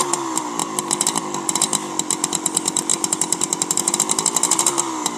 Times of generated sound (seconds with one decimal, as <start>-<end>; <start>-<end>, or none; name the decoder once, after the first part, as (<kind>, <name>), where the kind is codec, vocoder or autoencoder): none

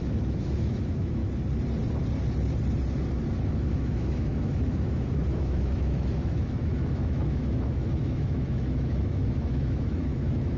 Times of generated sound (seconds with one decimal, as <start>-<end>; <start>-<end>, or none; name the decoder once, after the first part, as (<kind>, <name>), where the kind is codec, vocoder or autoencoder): 0.0-1.2 (autoencoder, DAC-VAE); 3.5-10.6